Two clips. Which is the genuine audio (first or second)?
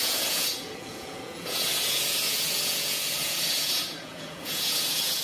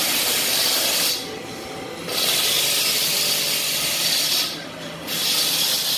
second